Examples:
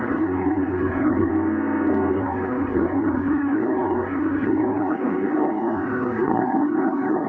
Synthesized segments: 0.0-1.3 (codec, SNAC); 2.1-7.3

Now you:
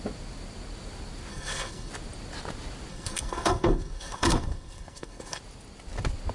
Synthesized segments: 1.3-1.9 (codec, SNAC); 2.9-5.4

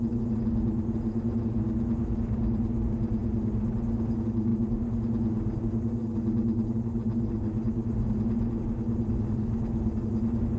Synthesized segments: none

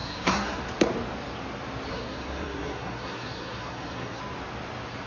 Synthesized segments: 0.0-0.6 (codec, SNAC); 1.9-4.2

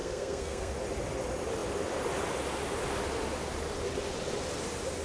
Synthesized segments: 0.0-0.7 (codec, SNAC)

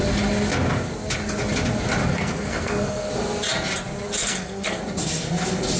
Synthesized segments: 2.1-3.1 (codec, SNAC); 4.2-4.8

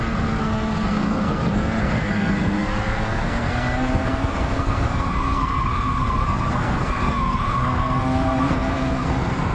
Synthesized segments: 0.0-9.5 (codec, SNAC)

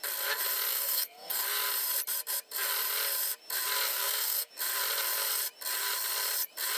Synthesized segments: 0.7-1.4 (codec, SNAC); 3.9-4.5